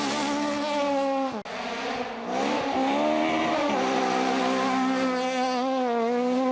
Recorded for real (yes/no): yes